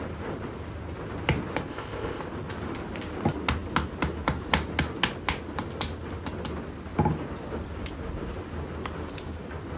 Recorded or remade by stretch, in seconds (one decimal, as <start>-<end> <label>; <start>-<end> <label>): 0.0-1.7 recorded; 1.7-2.2 remade; 2.2-9.8 recorded